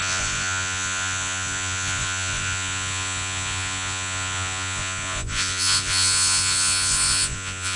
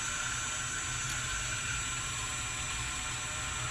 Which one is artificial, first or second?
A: first